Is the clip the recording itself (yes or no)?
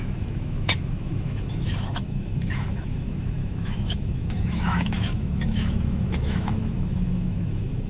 no